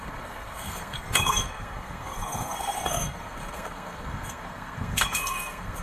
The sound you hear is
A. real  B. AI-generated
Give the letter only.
B